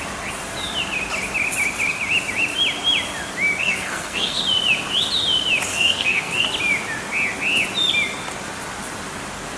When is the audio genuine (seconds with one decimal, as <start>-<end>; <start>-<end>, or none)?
0.0-3.6; 4.4-5.7; 6.4-9.6